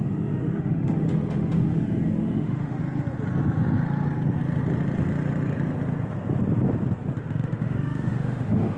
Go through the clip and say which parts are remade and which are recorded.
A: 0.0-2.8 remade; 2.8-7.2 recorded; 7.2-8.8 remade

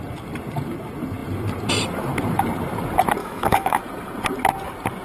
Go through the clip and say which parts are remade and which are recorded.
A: 0.0-3.2 recorded; 3.2-3.8 remade; 3.8-5.0 recorded